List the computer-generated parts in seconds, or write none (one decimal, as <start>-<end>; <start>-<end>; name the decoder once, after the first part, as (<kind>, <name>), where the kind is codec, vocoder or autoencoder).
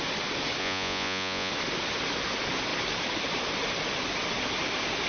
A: 0.6-1.5 (vocoder, Vocos)